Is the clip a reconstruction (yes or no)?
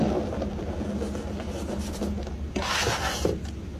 no